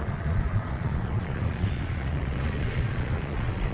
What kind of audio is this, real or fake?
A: fake